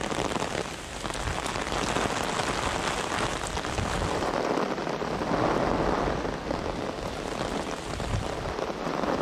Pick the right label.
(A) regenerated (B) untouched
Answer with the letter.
B